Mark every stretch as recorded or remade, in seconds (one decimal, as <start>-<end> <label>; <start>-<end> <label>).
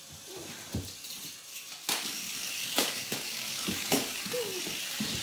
0.0-1.5 recorded; 1.5-4.6 remade; 4.6-5.2 recorded